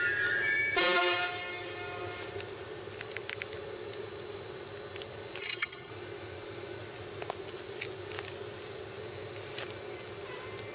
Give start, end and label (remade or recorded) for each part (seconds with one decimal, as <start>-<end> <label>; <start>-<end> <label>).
0.0-5.4 recorded; 5.4-5.9 remade; 5.9-10.7 recorded